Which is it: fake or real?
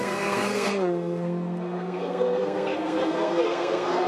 fake